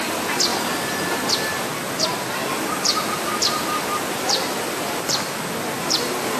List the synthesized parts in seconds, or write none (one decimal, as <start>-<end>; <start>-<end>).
none